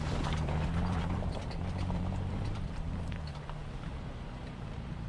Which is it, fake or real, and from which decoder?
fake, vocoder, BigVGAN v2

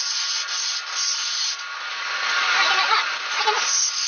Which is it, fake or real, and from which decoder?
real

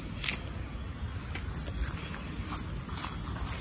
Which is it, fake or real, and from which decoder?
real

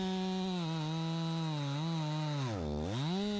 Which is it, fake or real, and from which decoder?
real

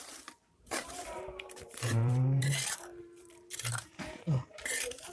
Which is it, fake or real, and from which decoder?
fake, vocoder, BigVGAN v2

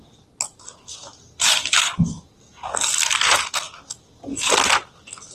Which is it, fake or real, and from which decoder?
real